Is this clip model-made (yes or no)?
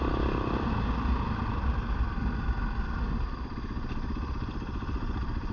no